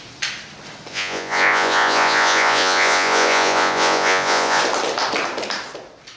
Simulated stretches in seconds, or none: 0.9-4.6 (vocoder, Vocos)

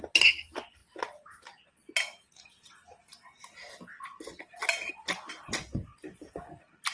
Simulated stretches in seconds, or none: none

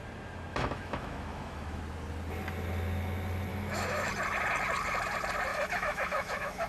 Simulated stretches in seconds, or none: 0.5-1.8 (autoencoder, DAC-VAE); 3.5-4.1; 5.5-6.7

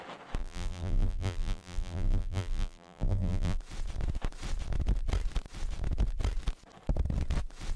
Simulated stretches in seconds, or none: 0.4-3.6 (vocoder, BigVGAN v2)